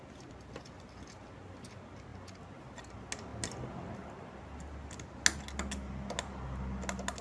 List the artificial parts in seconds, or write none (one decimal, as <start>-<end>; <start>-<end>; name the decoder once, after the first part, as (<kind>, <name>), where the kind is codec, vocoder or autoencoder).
none